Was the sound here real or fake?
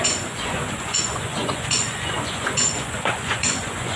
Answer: fake